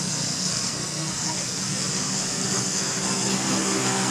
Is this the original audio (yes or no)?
no